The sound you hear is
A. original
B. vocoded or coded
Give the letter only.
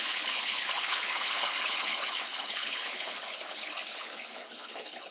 B